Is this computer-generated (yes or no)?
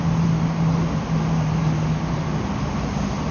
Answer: no